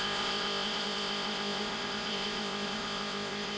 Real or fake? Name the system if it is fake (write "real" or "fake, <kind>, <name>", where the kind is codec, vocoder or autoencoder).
fake, codec, ZipCodec